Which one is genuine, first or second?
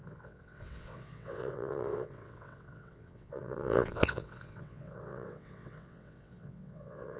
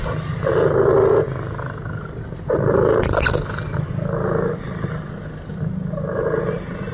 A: second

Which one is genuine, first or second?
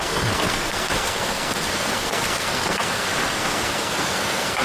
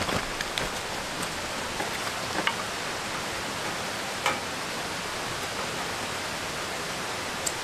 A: second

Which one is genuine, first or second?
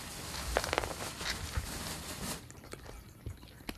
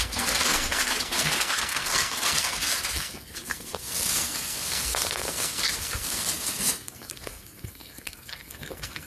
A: first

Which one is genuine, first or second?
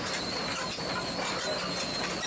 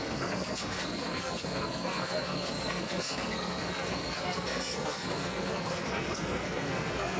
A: first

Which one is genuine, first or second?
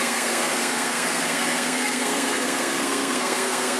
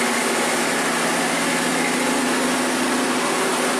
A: second